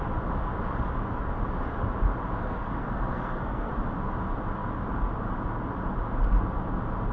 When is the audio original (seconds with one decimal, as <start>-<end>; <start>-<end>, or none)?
0.0-2.4; 3.7-7.1